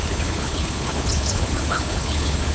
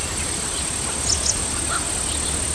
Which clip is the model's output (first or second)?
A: first